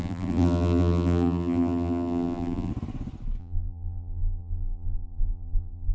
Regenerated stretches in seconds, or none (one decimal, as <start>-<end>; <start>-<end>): 0.0-2.7; 3.4-5.9